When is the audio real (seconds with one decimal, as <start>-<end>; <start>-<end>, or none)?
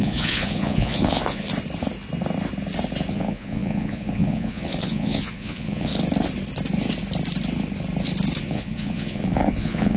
1.5-3.1; 5.9-8.4